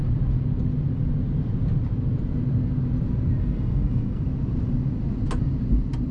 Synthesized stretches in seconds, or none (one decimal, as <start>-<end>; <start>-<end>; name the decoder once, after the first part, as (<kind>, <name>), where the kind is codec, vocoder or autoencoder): 3.4-4.2 (codec, SNAC)